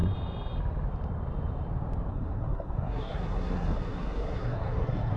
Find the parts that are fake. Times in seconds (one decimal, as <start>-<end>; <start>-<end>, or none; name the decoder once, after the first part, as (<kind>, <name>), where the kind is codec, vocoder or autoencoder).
2.1-5.2 (codec, SNAC)